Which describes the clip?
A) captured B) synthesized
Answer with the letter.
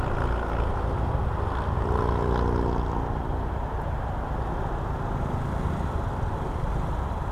A